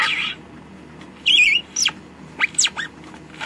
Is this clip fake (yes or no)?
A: no